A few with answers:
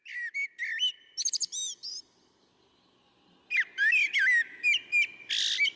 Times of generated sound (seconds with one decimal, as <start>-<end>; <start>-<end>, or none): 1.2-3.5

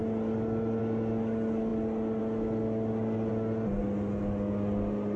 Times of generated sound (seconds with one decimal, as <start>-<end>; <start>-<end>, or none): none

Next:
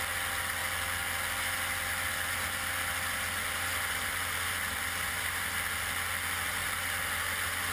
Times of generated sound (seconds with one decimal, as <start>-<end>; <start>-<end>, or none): none

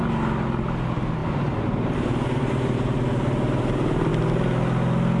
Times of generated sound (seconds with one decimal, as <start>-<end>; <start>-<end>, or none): 1.2-4.1

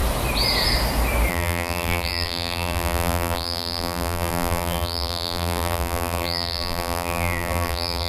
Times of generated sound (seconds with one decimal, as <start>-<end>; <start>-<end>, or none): 1.3-8.1

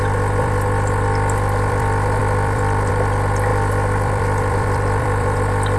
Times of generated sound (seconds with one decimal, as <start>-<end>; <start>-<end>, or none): 0.0-5.8

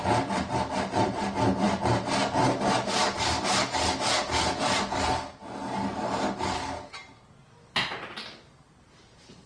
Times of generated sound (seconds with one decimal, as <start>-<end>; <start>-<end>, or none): none